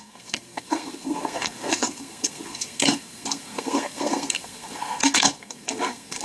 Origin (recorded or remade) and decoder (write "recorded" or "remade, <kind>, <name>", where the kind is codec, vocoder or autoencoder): remade, codec, SNAC